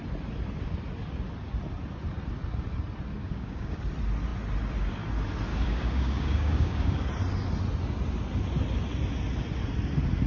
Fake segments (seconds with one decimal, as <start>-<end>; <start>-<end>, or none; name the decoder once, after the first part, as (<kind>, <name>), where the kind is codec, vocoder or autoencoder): 3.2-3.8 (codec, DAC); 5.5-7.1